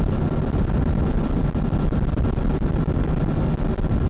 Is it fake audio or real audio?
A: real